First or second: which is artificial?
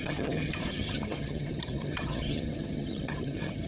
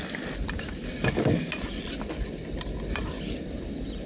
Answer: first